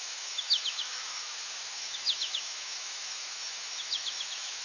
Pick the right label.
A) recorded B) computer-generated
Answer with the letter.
B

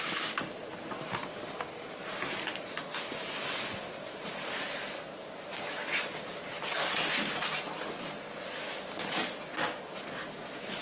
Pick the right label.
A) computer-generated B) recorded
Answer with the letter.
B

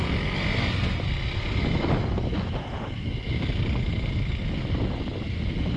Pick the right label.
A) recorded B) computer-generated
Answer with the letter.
A